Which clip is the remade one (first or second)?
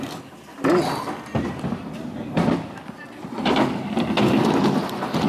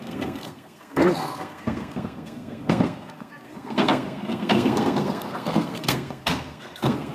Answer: second